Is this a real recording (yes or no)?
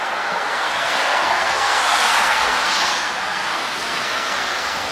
no